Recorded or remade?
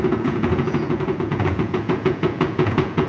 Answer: remade